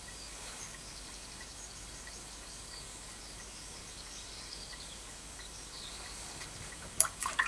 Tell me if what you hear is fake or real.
fake